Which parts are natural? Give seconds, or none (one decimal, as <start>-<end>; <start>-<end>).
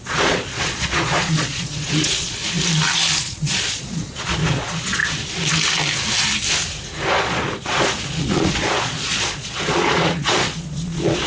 2.4-3.2; 5.0-7.1